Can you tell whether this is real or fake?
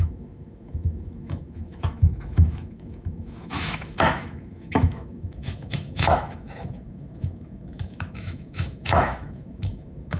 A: fake